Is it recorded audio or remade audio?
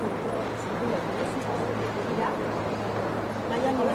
recorded